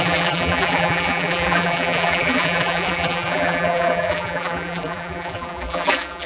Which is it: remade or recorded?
remade